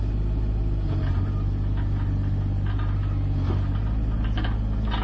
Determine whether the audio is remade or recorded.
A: recorded